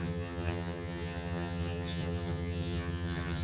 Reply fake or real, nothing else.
fake